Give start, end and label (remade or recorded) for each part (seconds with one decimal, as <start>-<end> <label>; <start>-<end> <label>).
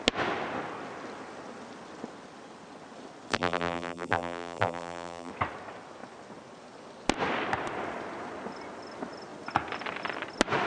0.0-3.3 recorded; 3.3-5.3 remade; 5.3-10.7 recorded